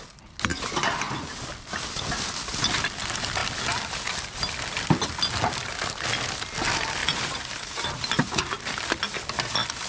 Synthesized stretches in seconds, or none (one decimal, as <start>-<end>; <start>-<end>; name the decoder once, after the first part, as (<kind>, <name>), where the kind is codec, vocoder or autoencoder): 7.0-8.1 (vocoder, BigVGAN v2)